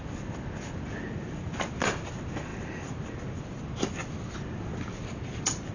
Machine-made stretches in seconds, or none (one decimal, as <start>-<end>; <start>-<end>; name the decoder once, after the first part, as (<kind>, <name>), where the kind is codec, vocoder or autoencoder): none